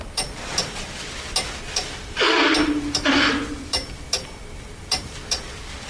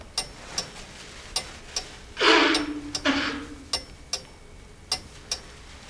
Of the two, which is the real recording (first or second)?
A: second